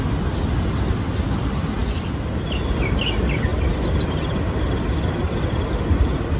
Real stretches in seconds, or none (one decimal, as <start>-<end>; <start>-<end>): 0.0-6.4